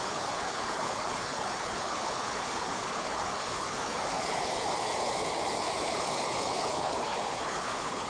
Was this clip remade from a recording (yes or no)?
yes